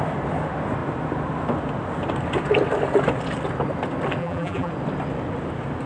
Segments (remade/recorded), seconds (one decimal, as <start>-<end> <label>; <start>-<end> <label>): 0.0-4.2 recorded; 4.2-4.7 remade; 4.7-5.9 recorded